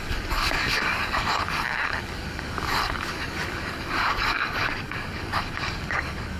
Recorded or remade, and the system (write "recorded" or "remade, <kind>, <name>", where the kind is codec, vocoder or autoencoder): remade, codec, DAC